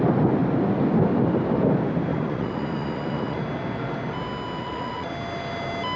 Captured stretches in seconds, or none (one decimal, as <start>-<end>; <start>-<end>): 0.0-2.1; 3.4-4.6; 5.1-6.0